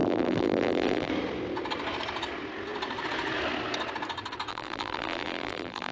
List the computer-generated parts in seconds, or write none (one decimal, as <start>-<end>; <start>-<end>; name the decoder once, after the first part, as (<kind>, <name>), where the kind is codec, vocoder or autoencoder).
0.0-1.1 (vocoder, BigVGAN v2); 4.5-5.9